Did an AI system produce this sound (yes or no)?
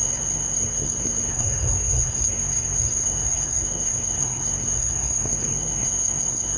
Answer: yes